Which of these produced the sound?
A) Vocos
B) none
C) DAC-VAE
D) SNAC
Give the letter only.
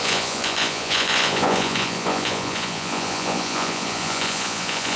A